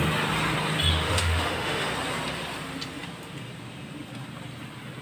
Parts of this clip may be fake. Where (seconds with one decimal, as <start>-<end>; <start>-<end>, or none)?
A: 0.9-1.9